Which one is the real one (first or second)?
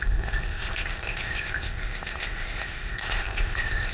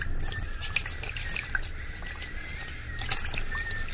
second